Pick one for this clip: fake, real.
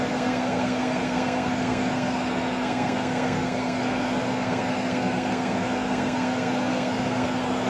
fake